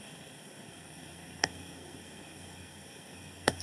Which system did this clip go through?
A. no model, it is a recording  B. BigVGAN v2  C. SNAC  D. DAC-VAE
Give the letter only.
C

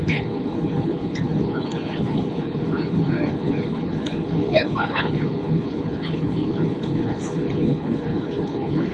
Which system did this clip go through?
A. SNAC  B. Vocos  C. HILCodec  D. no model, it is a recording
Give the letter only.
C